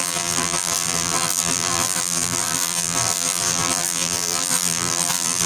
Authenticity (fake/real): fake